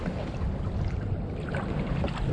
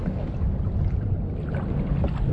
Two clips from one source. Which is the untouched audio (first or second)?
second